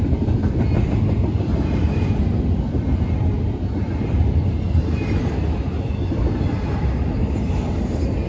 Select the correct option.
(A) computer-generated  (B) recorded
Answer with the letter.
B